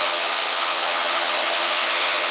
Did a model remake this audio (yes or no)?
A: yes